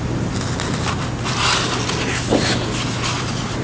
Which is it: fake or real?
real